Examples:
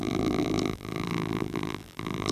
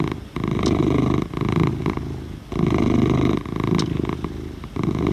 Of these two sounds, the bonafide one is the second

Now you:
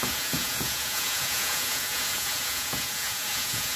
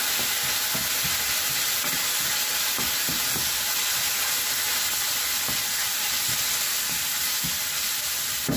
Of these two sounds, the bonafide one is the second